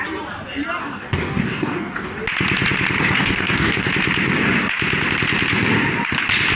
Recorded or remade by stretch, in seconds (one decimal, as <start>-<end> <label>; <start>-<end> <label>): 0.0-0.8 recorded; 0.8-2.2 remade; 2.2-3.0 recorded; 3.0-3.9 remade; 3.9-6.6 recorded